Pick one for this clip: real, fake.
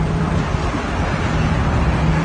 real